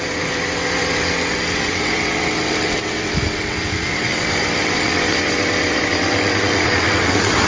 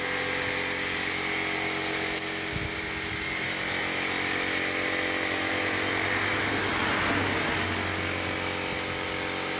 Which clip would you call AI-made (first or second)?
first